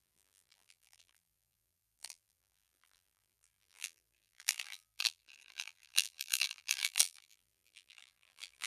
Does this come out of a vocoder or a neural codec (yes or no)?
yes